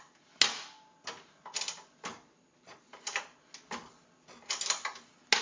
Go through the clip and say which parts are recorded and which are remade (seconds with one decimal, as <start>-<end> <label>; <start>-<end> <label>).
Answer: 0.0-2.1 recorded; 2.1-3.2 remade; 3.2-5.4 recorded